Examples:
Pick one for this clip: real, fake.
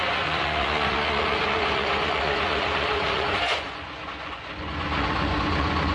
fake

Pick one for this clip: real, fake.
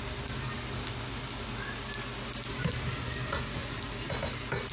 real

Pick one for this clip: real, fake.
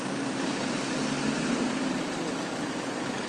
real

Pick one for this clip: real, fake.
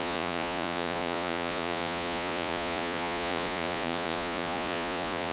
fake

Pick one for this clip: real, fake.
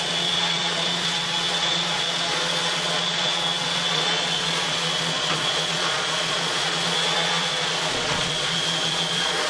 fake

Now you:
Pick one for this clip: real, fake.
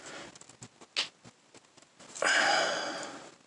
real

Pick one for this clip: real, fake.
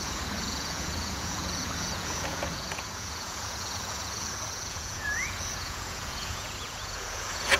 fake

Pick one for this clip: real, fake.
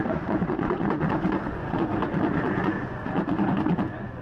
fake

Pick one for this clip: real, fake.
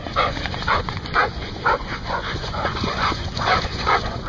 fake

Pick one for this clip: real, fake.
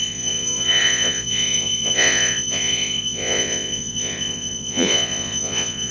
fake